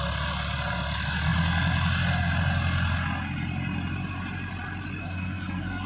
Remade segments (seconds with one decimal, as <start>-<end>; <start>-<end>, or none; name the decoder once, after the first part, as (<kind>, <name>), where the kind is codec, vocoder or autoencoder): 5.0-5.9 (codec, SNAC)